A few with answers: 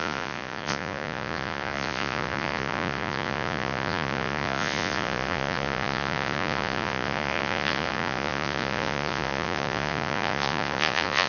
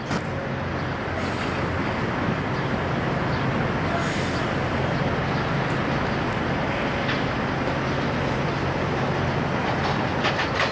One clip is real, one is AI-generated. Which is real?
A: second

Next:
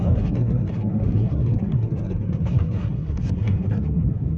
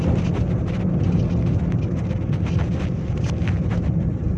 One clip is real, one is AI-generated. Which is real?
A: second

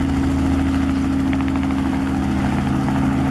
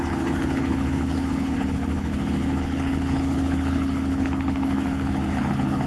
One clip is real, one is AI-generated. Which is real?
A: first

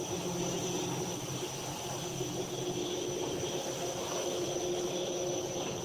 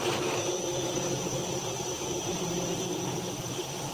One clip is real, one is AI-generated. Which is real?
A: first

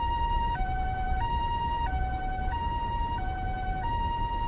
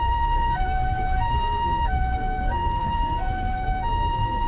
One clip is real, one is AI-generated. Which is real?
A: first